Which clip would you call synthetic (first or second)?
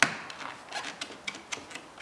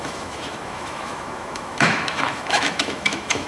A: second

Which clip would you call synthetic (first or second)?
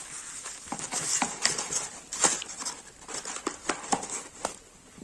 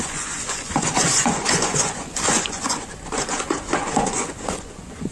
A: second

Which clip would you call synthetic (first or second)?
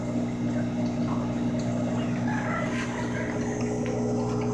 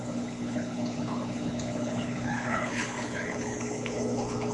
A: second